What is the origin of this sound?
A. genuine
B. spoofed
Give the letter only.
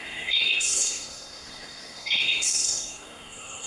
B